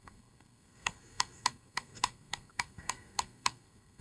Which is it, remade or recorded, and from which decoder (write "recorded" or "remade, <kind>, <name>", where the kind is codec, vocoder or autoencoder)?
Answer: remade, codec, SNAC